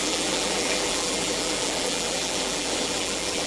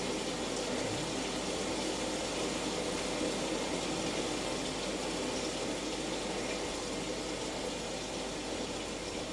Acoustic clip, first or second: second